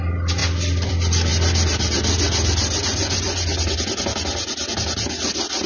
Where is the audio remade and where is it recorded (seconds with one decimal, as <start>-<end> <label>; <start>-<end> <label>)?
0.0-5.7 recorded